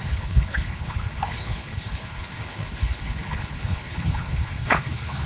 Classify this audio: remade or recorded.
remade